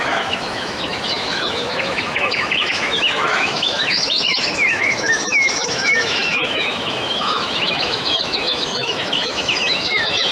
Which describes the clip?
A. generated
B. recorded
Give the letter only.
A